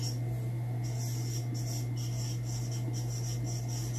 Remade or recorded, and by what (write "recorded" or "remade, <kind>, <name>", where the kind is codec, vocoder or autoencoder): recorded